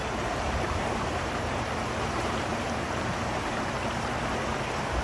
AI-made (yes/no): yes